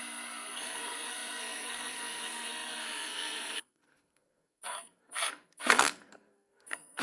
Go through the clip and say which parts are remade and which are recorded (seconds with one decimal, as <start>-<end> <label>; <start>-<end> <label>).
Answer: 0.0-7.0 remade